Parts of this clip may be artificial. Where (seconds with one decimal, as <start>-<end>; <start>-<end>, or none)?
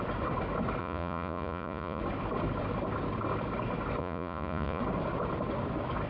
0.8-2.0; 4.0-4.8